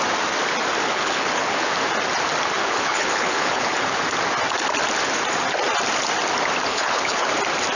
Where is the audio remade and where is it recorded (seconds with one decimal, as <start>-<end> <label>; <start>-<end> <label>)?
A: 0.0-0.8 recorded; 0.8-1.7 remade; 1.7-2.6 recorded; 2.6-4.0 remade; 4.0-6.7 recorded; 6.7-7.3 remade; 7.3-7.8 recorded